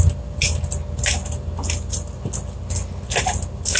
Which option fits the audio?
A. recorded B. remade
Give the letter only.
A